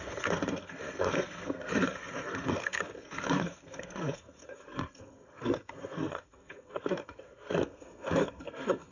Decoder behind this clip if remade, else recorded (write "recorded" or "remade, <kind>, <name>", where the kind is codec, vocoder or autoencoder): remade, codec, SNAC